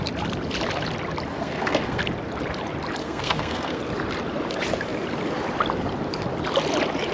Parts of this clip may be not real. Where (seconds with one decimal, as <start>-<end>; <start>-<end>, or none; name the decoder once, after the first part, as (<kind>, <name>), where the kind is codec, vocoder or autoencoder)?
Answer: 1.3-2.0 (codec, SNAC); 3.0-3.8